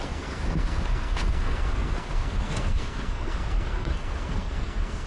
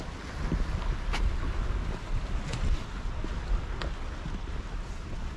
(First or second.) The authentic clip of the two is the second